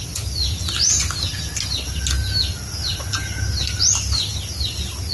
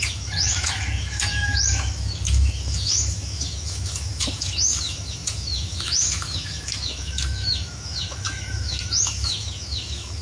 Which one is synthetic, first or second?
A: second